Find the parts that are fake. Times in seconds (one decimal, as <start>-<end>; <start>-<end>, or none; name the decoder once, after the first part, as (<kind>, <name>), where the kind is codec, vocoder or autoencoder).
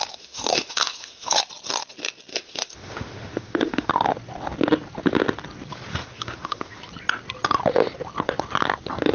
0.0-1.4 (autoencoder, DAC-VAE); 2.3-3.9; 5.9-6.8